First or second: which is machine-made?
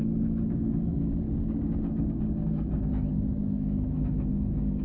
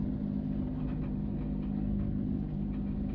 first